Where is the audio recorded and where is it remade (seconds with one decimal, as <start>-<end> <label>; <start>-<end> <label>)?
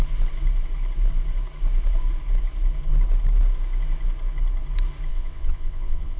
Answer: 0.0-5.1 recorded; 5.1-6.2 remade